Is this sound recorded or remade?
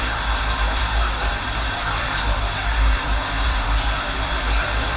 remade